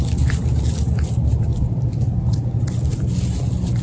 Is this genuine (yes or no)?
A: yes